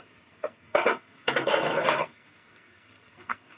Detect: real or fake fake